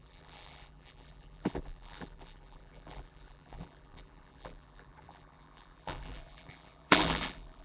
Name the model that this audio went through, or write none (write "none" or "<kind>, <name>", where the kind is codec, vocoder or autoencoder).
vocoder, BigVGAN v2